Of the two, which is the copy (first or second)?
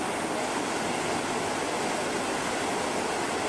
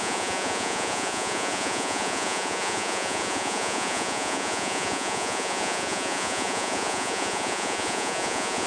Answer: second